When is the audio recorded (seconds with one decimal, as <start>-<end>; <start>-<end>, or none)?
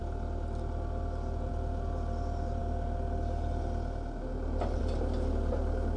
0.0-6.0